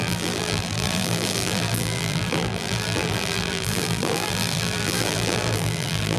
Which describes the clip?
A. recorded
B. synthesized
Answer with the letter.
B